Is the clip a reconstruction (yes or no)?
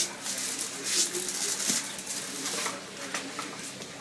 no